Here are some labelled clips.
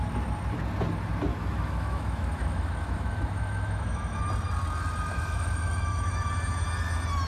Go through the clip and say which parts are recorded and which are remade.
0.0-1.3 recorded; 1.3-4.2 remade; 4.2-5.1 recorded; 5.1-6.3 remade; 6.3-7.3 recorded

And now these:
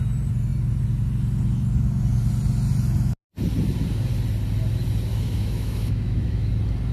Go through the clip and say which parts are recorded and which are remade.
0.0-5.1 recorded; 5.1-6.5 remade; 6.5-6.9 recorded

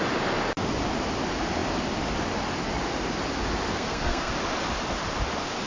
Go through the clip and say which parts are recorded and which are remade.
0.0-3.7 recorded; 3.7-4.3 remade; 4.3-5.7 recorded

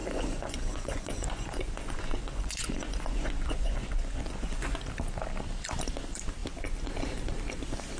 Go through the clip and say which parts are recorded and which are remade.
0.0-4.8 remade; 4.8-8.0 recorded

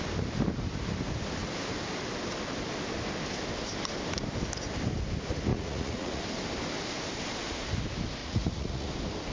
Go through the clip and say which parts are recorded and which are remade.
0.0-5.5 recorded; 5.5-6.2 remade; 6.2-8.2 recorded; 8.2-8.9 remade; 8.9-9.3 recorded